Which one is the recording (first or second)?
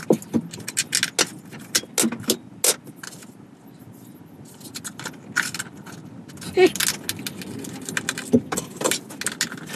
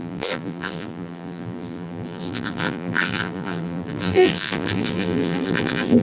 first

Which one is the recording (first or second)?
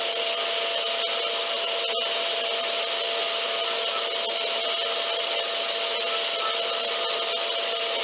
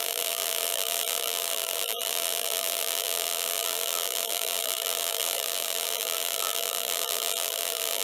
first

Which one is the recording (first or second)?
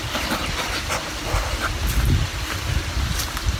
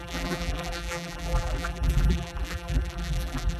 first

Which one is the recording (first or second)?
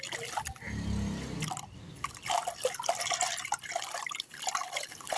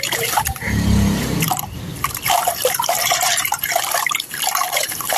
first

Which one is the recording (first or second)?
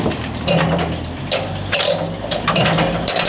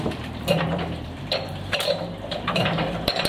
first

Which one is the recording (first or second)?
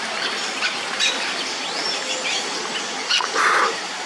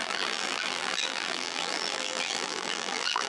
first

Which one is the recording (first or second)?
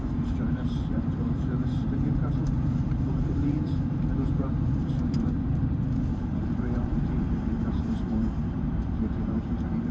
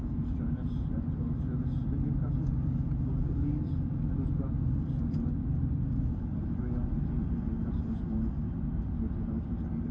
second